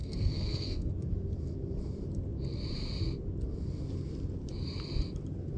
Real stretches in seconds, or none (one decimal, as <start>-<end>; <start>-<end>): 0.9-5.6